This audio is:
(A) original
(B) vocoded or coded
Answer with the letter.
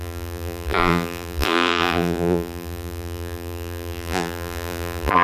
B